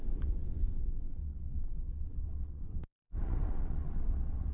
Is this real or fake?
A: fake